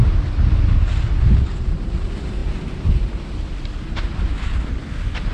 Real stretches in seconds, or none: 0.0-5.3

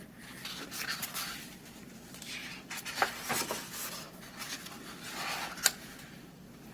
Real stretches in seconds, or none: 0.0-6.7

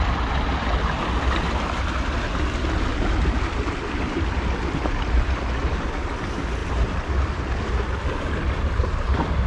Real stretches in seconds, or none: 0.0-9.5

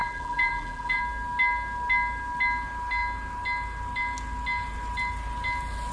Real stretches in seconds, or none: 1.0-5.9

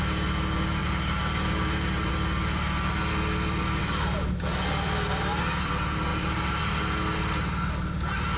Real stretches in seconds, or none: 0.0-0.8; 2.1-3.8; 4.5-6.1; 6.6-8.4

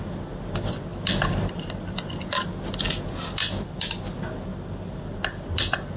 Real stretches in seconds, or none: 0.0-3.4; 4.0-6.0

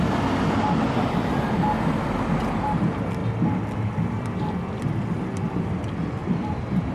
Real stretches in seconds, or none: 0.0-6.2

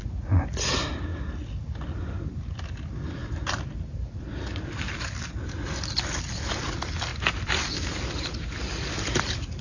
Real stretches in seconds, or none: 0.0-3.2; 4.9-9.6